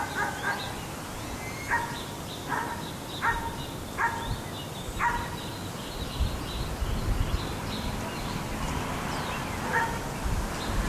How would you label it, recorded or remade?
recorded